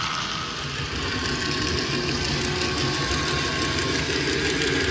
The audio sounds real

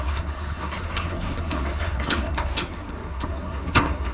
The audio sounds fake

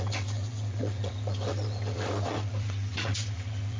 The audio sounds fake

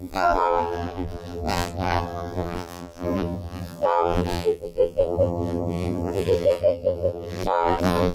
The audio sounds fake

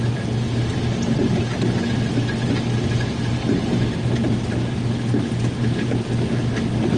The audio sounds real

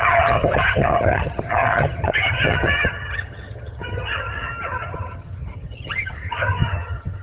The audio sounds fake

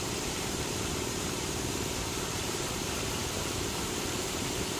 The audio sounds fake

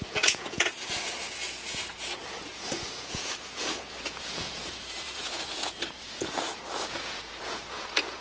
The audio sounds fake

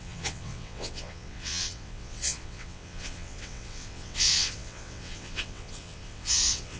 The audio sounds fake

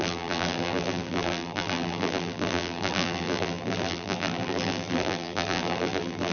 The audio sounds fake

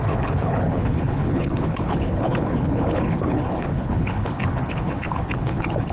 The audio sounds fake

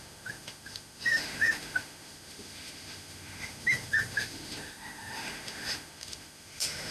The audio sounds fake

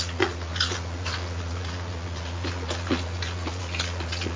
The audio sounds fake